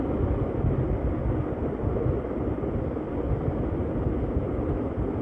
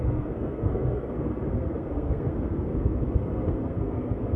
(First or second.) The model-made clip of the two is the second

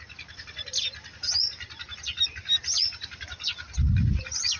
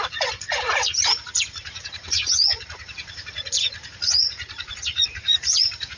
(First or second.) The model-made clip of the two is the second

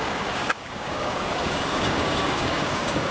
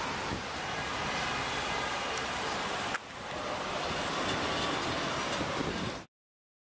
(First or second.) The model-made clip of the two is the first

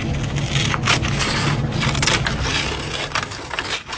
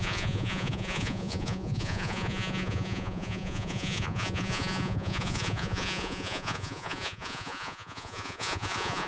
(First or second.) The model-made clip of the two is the second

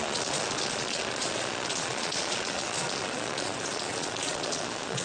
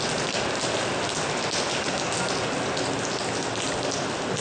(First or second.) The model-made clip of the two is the first